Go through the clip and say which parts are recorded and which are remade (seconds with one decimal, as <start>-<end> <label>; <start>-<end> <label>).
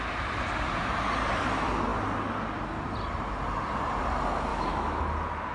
0.0-4.5 recorded; 4.5-5.0 remade; 5.0-5.5 recorded